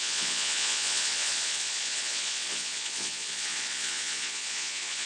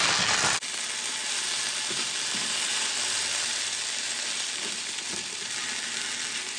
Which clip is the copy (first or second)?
first